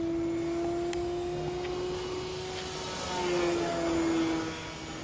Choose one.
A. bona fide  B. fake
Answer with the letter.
A